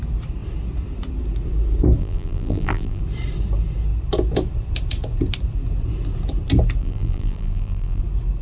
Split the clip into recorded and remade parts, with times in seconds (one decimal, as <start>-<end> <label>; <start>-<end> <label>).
0.0-2.0 recorded; 2.0-3.0 remade; 3.0-6.8 recorded; 6.8-8.0 remade; 8.0-8.4 recorded